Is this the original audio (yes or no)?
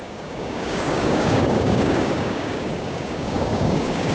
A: no